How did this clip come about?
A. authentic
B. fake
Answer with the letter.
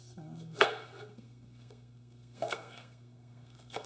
B